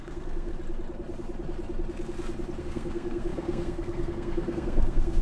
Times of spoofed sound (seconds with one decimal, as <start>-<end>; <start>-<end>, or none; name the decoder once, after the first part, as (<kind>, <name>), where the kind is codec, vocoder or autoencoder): 0.0-0.5 (codec, SNAC); 2.6-5.2